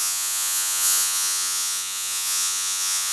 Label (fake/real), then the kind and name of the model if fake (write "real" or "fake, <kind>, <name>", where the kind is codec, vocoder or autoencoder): fake, vocoder, Vocos